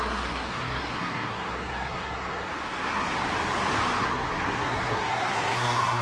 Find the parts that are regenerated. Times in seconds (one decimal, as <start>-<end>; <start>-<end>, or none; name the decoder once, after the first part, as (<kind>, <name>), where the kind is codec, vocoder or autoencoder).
0.0-3.2 (codec, SNAC); 4.0-6.0